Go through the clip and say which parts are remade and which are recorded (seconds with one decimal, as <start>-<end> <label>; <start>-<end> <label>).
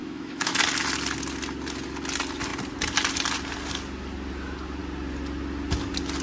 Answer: 0.0-0.6 remade; 0.6-6.2 recorded